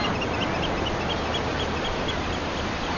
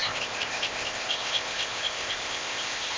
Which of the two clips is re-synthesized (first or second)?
second